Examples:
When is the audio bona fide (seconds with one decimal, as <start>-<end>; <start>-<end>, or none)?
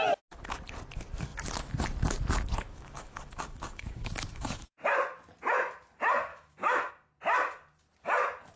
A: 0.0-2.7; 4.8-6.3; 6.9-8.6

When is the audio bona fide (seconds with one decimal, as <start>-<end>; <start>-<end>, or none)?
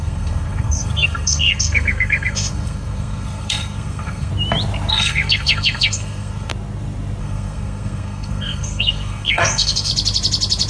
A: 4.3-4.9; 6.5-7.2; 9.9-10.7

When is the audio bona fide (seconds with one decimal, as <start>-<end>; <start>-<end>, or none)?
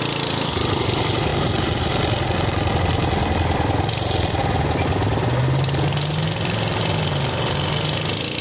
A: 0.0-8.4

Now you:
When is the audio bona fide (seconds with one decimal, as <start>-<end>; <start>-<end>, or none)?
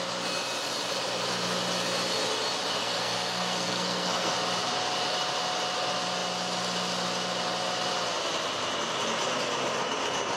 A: 0.0-2.8; 4.3-10.4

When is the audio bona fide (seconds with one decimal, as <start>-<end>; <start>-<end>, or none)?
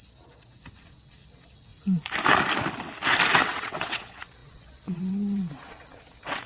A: 1.7-3.3